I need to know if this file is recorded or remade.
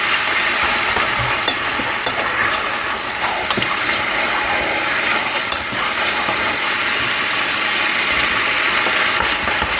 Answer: remade